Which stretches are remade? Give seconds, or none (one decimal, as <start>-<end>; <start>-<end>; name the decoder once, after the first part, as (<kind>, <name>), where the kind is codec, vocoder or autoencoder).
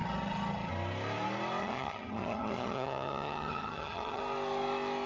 0.0-0.7 (vocoder, HiFi-GAN); 1.6-4.2